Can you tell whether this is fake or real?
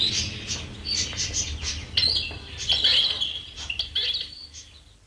real